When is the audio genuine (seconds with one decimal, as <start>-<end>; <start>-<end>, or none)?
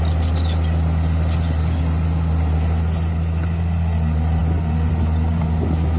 0.0-6.0